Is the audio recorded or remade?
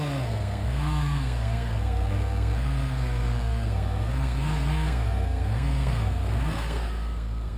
remade